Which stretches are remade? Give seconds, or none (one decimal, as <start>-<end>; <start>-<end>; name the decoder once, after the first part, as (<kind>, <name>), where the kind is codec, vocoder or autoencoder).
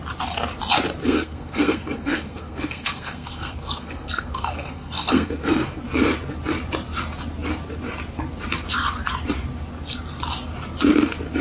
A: 1.0-5.8 (codec, SNAC)